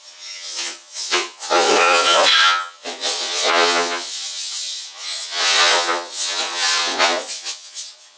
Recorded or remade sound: remade